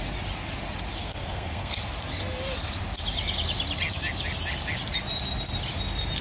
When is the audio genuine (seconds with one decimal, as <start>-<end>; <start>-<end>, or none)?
0.0-1.0; 1.8-6.2